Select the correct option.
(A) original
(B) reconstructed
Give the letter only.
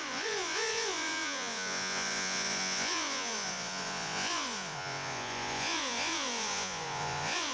B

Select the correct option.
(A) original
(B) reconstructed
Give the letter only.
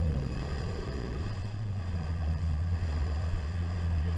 B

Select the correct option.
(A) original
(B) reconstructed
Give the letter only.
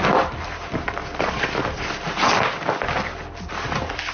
A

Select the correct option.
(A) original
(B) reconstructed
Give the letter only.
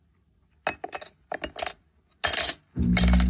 A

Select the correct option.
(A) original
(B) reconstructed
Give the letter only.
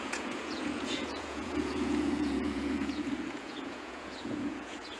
B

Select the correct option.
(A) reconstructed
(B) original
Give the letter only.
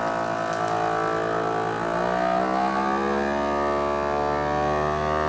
B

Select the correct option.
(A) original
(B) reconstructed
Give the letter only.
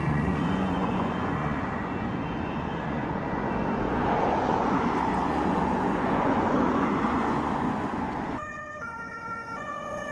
B